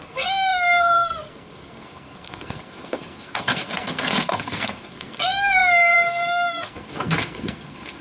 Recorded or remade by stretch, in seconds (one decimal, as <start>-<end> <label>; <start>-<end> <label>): 0.0-8.0 remade